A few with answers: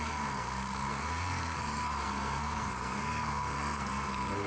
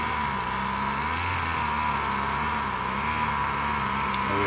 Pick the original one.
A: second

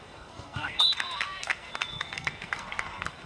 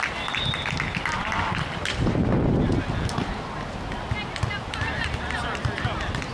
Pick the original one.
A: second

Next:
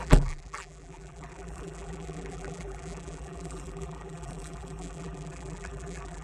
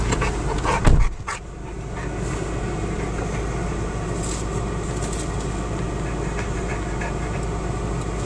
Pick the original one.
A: second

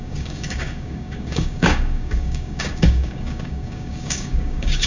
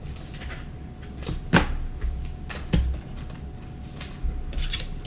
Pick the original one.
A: second